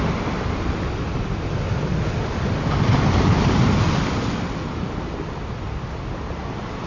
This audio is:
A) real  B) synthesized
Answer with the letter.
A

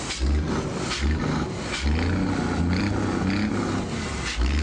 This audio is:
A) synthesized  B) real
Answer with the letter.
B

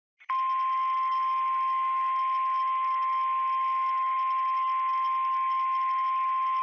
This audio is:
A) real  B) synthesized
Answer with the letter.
A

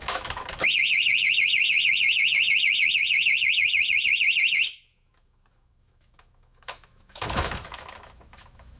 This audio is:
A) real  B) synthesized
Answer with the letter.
B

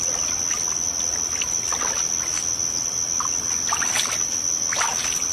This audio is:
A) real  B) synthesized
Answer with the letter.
A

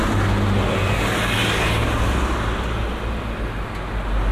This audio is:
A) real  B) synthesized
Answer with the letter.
A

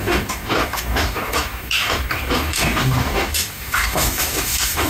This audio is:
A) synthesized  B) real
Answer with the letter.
A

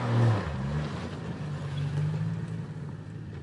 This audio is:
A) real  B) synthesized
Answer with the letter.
A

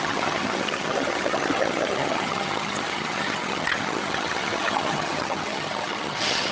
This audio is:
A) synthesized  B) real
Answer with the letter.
A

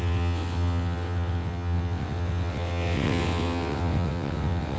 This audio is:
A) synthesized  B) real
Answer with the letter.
A